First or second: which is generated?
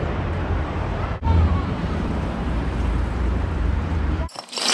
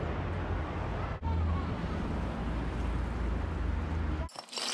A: first